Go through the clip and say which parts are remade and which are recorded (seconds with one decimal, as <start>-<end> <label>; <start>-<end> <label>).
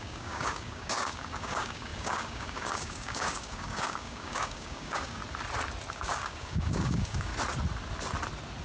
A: 0.0-5.2 remade; 5.2-5.9 recorded; 5.9-7.3 remade; 7.3-8.6 recorded